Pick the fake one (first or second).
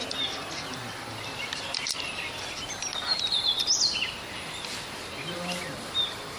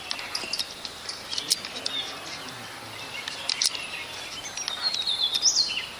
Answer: first